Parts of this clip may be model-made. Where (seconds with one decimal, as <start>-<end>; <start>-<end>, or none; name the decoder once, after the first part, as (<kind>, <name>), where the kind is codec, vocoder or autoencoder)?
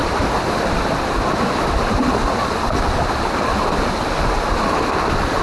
none